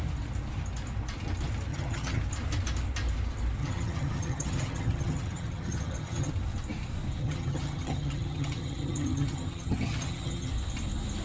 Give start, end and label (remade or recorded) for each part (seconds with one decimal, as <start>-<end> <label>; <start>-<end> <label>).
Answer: 0.0-1.7 recorded; 1.7-2.2 remade; 2.2-3.6 recorded; 3.6-6.3 remade; 6.3-7.2 recorded; 7.2-10.5 remade; 10.5-11.2 recorded